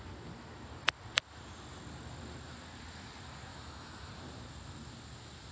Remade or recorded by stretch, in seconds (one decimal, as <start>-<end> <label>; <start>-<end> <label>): 0.0-3.5 recorded; 3.5-4.1 remade; 4.1-5.5 recorded